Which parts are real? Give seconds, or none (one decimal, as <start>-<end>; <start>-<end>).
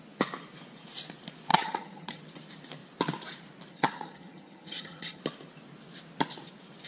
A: 0.0-1.5; 2.2-3.7; 5.2-6.9